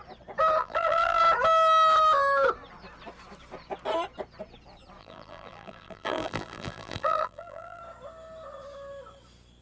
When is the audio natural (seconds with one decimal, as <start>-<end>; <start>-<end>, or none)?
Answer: 0.0-0.6; 1.2-5.0; 7.8-9.6